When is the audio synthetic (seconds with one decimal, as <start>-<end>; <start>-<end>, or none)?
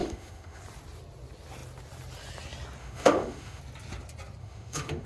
0.0-0.6; 2.8-3.6; 4.4-5.1